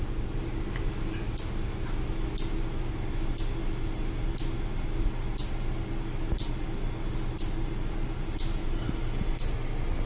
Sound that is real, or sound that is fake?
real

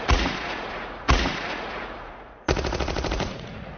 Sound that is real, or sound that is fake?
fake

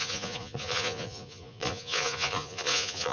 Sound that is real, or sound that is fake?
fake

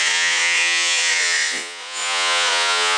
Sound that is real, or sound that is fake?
fake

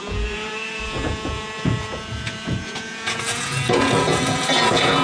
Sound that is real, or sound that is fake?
fake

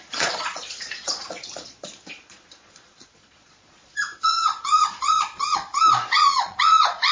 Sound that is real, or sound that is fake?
fake